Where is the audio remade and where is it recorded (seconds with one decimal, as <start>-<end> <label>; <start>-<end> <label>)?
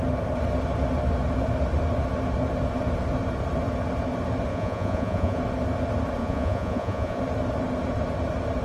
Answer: 0.0-4.5 recorded; 4.5-5.4 remade; 5.4-6.2 recorded; 6.2-7.2 remade; 7.2-8.6 recorded